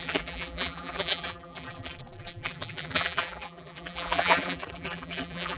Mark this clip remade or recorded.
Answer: remade